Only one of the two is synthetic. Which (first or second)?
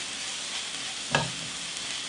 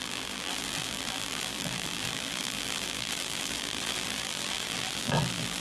second